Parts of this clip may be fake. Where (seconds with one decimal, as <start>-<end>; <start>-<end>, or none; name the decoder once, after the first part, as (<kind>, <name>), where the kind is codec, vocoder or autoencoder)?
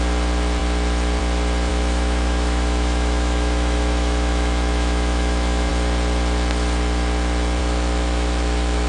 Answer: 1.7-5.7 (autoencoder, DAC-VAE); 7.6-8.9